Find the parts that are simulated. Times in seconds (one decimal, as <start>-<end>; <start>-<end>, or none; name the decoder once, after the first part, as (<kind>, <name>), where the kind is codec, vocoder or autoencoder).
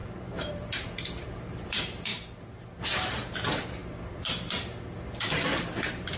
0.0-2.1 (vocoder, BigVGAN v2); 2.8-3.8; 4.9-6.2